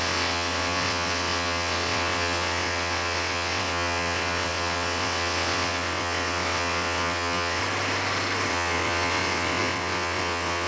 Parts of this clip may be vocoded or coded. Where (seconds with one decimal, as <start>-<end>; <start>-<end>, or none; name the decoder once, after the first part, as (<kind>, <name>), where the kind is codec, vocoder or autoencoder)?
0.0-7.6 (vocoder, WaveNeXt); 8.5-10.7